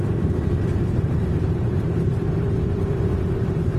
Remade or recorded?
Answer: remade